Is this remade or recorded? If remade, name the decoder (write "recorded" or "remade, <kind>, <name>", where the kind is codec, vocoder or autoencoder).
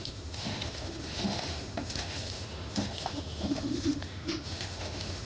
remade, autoencoder, DAC-VAE